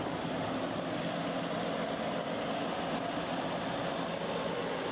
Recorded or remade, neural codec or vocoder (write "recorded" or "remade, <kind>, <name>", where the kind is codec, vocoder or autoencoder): recorded